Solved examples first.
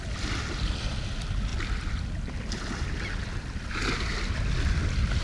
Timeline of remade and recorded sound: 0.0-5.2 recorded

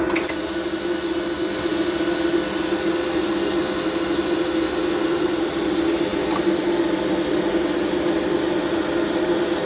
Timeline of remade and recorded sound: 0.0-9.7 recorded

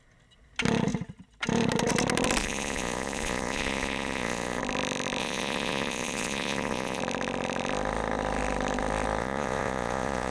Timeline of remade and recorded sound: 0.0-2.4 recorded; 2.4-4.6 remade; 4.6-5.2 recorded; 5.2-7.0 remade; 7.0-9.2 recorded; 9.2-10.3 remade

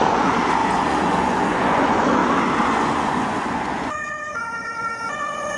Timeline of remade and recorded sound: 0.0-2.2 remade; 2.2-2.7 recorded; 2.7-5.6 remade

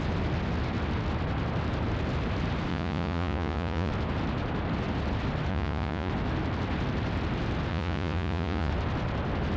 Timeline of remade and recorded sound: 0.0-2.7 recorded; 2.7-3.9 remade; 3.9-5.5 recorded; 5.5-6.1 remade; 6.1-7.7 recorded; 7.7-8.7 remade; 8.7-9.6 recorded